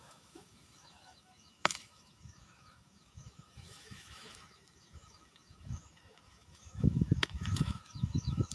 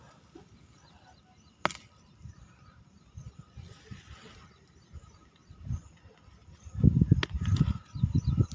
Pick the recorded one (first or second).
second